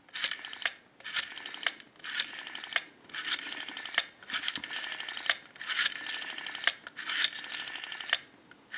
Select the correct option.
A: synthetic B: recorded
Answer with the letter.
B